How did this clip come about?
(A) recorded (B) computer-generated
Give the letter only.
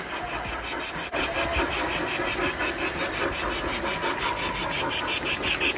A